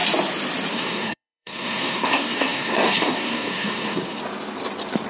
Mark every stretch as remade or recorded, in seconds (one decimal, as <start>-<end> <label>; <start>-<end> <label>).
0.0-0.7 recorded; 0.7-4.2 remade; 4.2-5.1 recorded